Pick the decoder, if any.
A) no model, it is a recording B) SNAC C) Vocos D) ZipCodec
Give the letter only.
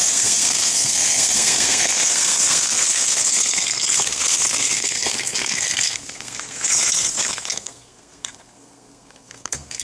B